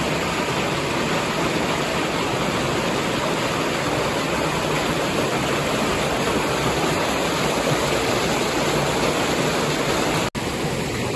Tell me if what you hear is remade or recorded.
recorded